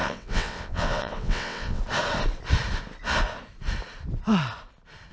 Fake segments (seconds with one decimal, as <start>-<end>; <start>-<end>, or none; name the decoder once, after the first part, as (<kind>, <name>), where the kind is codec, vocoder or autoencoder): 0.0-1.8 (vocoder, WaveNeXt)